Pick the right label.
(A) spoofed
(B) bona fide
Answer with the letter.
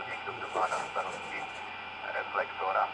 A